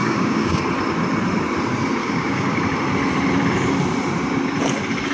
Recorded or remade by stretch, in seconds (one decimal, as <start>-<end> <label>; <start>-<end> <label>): 0.0-0.6 remade; 0.6-2.0 recorded; 2.0-2.6 remade; 2.6-5.1 recorded